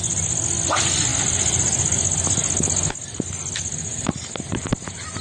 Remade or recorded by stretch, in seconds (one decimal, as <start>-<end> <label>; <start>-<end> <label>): 0.0-5.2 recorded